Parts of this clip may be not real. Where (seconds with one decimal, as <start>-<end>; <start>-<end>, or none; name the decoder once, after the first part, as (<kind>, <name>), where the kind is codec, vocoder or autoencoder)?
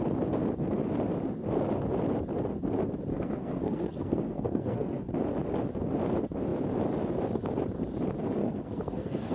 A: 3.1-5.1 (codec, SNAC); 8.4-9.3